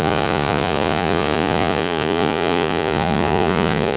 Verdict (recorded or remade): remade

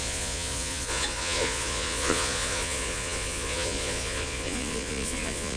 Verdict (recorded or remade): remade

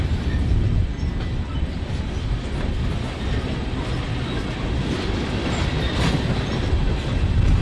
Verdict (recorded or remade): recorded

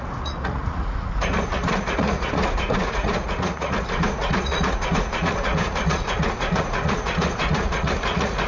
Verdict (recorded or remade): remade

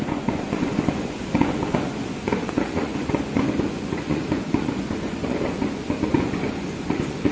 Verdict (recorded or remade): remade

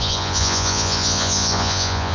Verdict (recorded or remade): remade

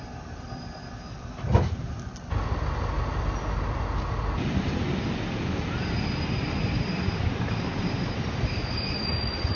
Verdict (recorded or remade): recorded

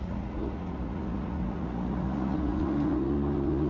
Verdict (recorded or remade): remade